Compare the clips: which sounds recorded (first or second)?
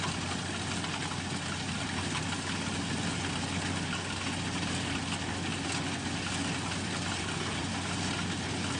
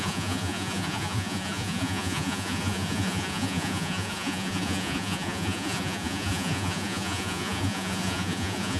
first